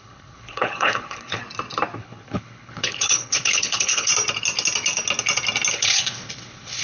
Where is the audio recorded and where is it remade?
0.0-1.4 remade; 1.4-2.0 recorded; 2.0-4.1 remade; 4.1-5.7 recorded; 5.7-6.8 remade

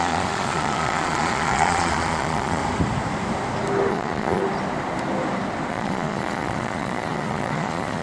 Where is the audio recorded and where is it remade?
0.0-2.6 remade; 2.6-3.9 recorded; 3.9-4.4 remade; 4.4-5.7 recorded; 5.7-8.0 remade

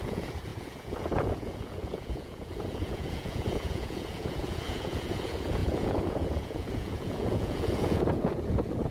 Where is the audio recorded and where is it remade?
0.0-8.9 remade

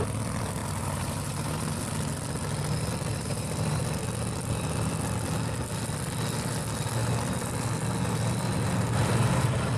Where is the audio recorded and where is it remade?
0.0-0.6 recorded; 0.6-1.8 remade; 1.8-3.1 recorded; 3.1-3.8 remade; 3.8-9.8 recorded

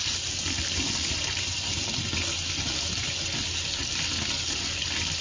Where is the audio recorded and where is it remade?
0.0-5.2 recorded

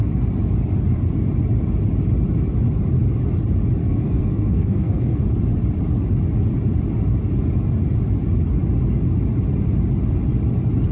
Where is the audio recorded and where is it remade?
0.0-3.8 recorded; 3.8-5.2 remade; 5.2-10.9 recorded